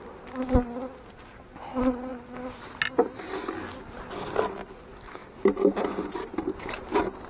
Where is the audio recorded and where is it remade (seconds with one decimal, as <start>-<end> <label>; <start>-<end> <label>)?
0.0-7.3 recorded